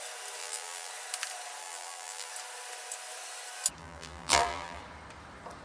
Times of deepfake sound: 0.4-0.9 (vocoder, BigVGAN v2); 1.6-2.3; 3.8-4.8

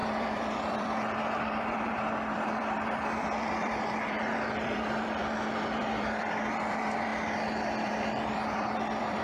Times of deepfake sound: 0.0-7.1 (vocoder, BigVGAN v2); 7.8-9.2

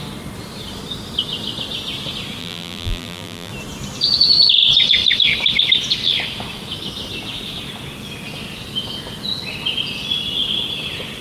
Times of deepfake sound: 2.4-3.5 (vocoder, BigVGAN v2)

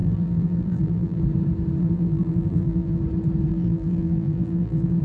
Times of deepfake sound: 0.0-1.2 (vocoder, BigVGAN v2); 1.8-3.0; 3.5-5.0

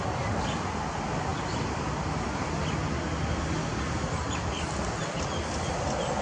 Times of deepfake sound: none